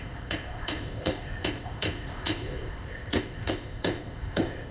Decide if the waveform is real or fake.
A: fake